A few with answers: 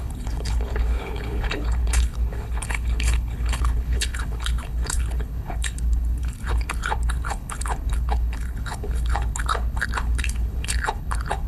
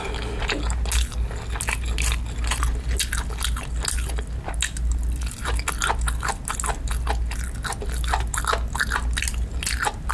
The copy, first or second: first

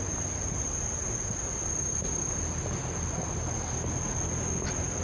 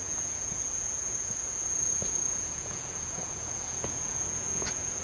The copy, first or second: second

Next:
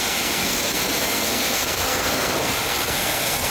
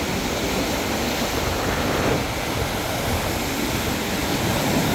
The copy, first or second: first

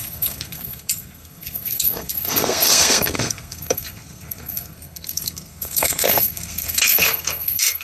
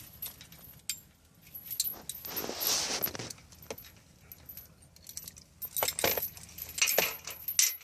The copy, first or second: first